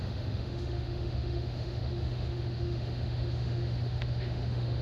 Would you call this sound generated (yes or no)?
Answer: yes